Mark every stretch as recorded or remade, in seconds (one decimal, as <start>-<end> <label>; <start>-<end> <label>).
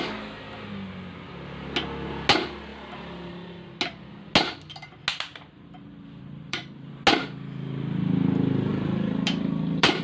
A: 0.0-5.1 recorded; 5.1-6.9 remade; 6.9-8.7 recorded; 8.7-10.0 remade